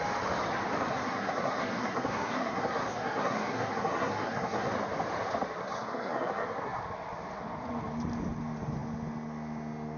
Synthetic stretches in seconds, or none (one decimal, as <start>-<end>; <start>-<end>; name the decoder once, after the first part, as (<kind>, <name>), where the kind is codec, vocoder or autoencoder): 0.9-4.7 (codec, SNAC); 5.6-6.8